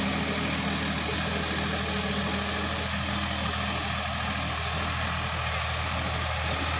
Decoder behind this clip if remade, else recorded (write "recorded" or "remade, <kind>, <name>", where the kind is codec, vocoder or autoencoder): recorded